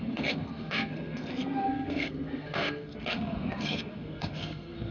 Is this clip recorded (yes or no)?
no